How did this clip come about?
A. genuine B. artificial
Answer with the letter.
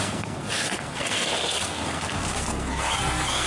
B